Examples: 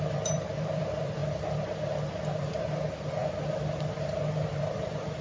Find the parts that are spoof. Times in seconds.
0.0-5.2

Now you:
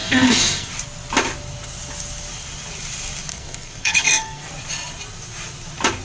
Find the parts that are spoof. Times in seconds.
0.0-0.7; 3.3-4.5

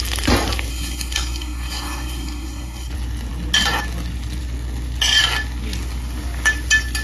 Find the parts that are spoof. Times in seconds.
0.7-2.9

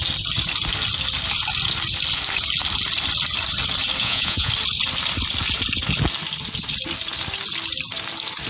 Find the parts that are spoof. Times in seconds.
4.0-4.5

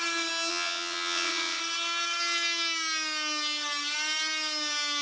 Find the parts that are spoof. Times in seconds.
0.5-1.6

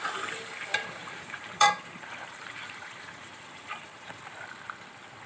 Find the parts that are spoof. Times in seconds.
1.0-4.2

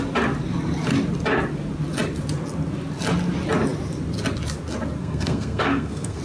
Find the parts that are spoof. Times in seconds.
5.0-6.2

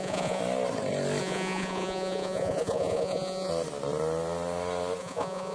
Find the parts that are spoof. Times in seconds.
0.0-0.4; 1.2-3.5; 5.0-5.5